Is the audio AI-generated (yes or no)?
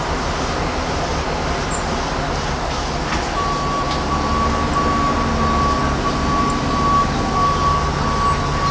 no